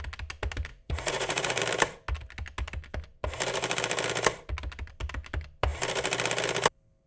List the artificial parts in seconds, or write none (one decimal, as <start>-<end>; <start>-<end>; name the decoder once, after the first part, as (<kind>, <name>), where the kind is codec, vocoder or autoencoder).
0.7-1.6 (vocoder, Vocos)